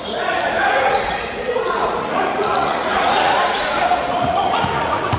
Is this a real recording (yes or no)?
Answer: no